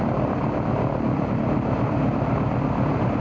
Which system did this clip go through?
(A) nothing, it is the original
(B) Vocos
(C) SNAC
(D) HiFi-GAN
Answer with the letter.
A